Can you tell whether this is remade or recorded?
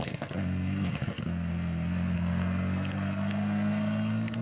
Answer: remade